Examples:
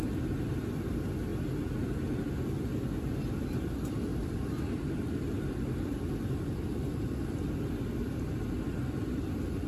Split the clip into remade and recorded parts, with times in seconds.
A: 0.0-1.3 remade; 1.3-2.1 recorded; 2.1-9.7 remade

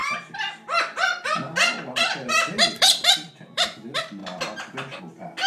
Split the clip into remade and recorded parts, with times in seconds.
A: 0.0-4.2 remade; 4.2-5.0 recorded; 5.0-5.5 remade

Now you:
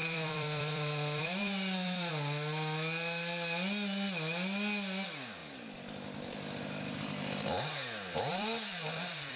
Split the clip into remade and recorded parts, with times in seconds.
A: 0.0-2.1 remade; 2.1-5.4 recorded; 5.4-9.4 remade

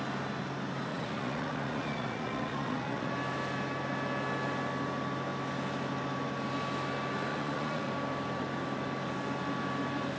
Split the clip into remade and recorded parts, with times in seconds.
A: 0.0-0.9 recorded; 0.9-3.1 remade; 3.1-7.3 recorded; 7.3-7.9 remade; 7.9-10.2 recorded

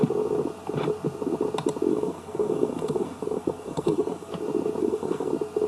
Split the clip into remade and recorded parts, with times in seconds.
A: 0.0-1.9 recorded; 1.9-4.3 remade; 4.3-4.8 recorded; 4.8-5.3 remade; 5.3-5.7 recorded

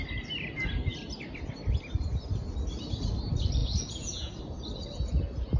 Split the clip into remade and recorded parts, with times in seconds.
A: 0.0-3.6 recorded; 3.6-4.4 remade; 4.4-5.6 recorded